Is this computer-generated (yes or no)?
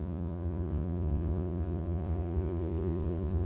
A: yes